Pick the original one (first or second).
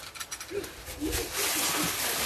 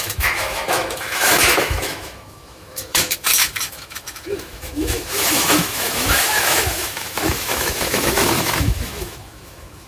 first